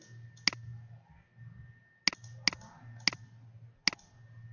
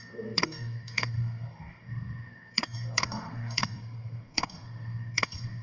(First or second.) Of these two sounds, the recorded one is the first